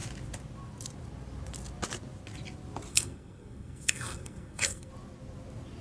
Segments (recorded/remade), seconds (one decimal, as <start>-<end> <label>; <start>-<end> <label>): 0.0-2.9 recorded; 2.9-4.9 remade; 4.9-5.8 recorded